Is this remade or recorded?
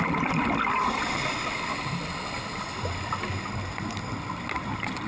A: recorded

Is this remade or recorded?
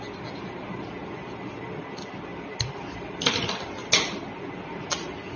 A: recorded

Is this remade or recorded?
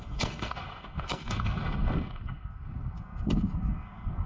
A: remade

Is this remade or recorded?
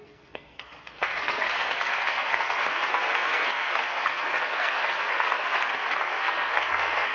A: remade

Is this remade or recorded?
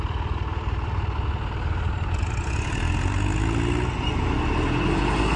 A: recorded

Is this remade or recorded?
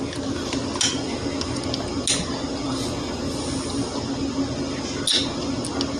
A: recorded